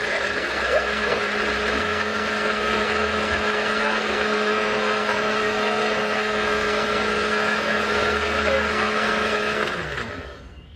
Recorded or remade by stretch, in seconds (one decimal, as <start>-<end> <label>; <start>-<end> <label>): 0.0-1.3 remade; 1.3-1.8 recorded; 1.8-10.8 remade